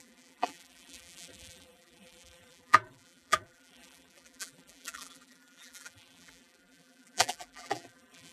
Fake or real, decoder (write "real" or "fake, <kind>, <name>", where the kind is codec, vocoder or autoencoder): fake, vocoder, BigVGAN v2